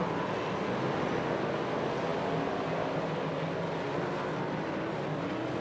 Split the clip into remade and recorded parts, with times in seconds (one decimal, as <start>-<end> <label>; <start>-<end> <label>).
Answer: 0.0-5.6 recorded

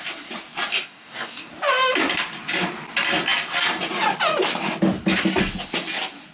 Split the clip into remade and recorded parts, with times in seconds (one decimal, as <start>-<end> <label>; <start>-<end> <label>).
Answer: 0.0-0.7 recorded; 0.7-1.5 remade; 1.5-6.3 recorded

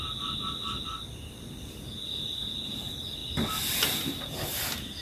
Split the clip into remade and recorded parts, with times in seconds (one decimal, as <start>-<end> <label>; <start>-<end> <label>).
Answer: 0.0-5.0 recorded

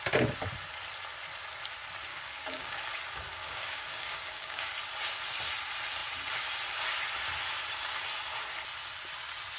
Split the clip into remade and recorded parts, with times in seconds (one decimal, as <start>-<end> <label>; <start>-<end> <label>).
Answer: 0.0-2.1 recorded; 2.1-2.8 remade; 2.8-3.3 recorded; 3.3-4.7 remade; 4.7-9.6 recorded

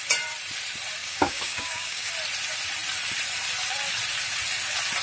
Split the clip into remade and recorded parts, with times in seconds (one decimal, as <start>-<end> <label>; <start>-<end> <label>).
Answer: 0.0-1.0 recorded; 1.0-2.1 remade; 2.1-5.0 recorded